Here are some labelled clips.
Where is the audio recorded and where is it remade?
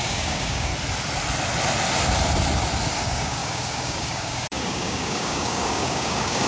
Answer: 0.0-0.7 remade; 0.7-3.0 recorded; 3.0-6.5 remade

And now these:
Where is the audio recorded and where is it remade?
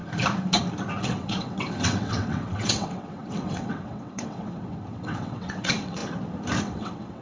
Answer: 0.0-1.0 recorded; 1.0-6.0 remade; 6.0-6.6 recorded; 6.6-7.2 remade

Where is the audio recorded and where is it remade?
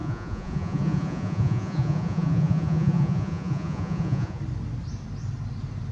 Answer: 0.0-4.4 remade; 4.4-5.9 recorded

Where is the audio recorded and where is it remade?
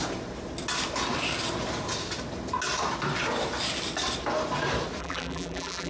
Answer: 0.0-5.0 recorded; 5.0-5.9 remade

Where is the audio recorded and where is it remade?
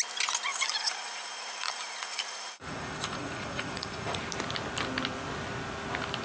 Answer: 0.0-0.5 recorded; 0.5-4.2 remade; 4.2-6.2 recorded